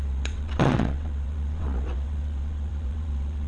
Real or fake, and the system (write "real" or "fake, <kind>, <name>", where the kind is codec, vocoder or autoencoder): fake, vocoder, WaveNeXt